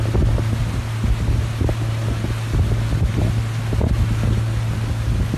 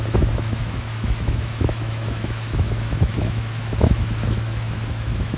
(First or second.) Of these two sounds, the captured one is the first